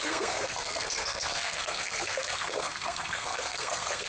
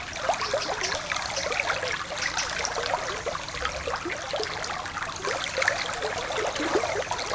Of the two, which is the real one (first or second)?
second